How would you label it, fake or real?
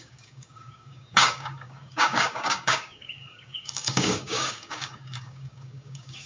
fake